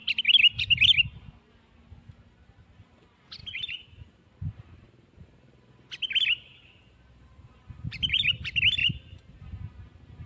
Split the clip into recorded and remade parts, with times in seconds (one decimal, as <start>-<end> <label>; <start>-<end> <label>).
0.0-3.4 recorded; 3.4-5.7 remade; 5.7-6.5 recorded; 6.5-8.2 remade; 8.2-8.8 recorded; 8.8-9.6 remade; 9.6-10.3 recorded